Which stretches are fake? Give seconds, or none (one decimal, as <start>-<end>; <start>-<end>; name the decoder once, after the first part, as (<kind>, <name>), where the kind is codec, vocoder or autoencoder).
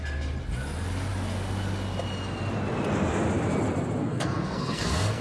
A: 4.0-5.2 (codec, SNAC)